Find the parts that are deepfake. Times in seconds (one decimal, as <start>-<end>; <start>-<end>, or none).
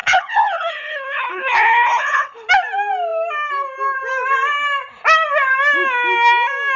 0.0-2.5